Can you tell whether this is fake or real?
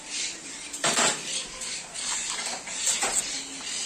real